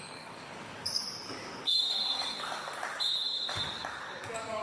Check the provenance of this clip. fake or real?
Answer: fake